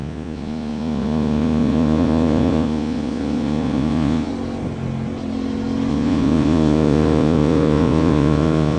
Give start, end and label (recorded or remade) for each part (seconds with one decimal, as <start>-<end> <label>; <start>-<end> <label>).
0.0-4.3 remade; 4.3-5.9 recorded; 5.9-8.8 remade